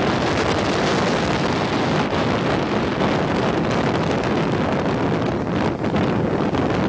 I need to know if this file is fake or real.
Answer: real